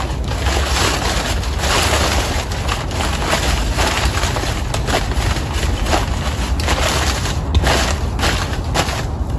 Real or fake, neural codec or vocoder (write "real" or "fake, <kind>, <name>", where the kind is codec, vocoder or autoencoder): real